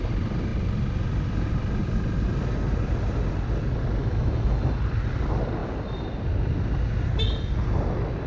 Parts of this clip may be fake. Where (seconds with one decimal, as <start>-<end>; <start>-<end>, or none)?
4.0-4.8